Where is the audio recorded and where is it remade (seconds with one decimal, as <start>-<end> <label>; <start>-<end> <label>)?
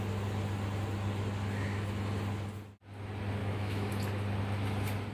0.0-3.4 recorded; 3.4-3.9 remade; 3.9-5.1 recorded